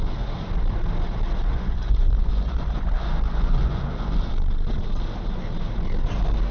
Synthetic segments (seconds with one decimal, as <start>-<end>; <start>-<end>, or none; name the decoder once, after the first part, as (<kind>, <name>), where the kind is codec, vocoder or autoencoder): 1.5-4.3 (vocoder, Vocos)